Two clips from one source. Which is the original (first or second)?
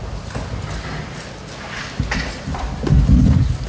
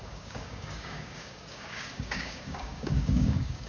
first